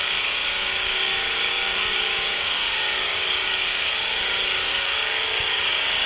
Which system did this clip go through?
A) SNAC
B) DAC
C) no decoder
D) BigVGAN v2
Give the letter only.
B